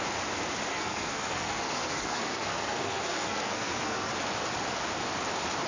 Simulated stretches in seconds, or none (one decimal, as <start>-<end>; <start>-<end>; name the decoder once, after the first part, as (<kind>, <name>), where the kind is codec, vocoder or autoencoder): 0.7-4.1 (codec, SNAC)